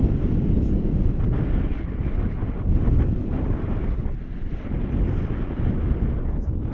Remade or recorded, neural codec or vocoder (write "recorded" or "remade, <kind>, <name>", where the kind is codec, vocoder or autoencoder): recorded